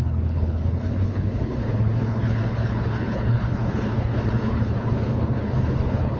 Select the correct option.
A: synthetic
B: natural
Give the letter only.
A